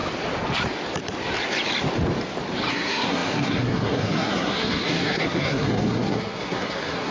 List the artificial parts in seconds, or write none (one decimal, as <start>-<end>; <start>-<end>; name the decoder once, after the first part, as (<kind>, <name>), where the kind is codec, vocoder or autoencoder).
2.7-7.1 (codec, SNAC)